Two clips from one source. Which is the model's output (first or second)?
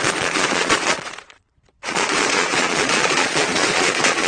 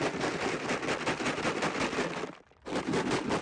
first